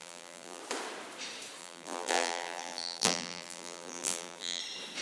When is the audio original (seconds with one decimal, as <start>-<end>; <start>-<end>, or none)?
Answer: 0.6-1.6; 4.6-5.0